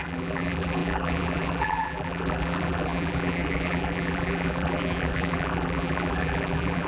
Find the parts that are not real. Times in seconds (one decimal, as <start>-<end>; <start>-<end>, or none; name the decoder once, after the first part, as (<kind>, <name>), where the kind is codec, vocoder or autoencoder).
0.0-6.9 (vocoder, BigVGAN v2)